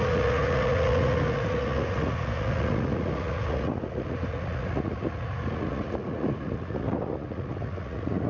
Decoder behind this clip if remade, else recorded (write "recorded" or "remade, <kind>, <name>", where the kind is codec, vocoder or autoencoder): remade, vocoder, Vocos